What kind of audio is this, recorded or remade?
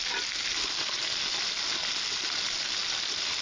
recorded